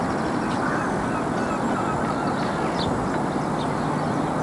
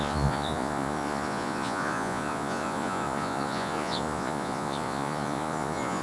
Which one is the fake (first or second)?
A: second